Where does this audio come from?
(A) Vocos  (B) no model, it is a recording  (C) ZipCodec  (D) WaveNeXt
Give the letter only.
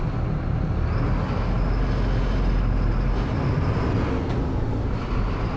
B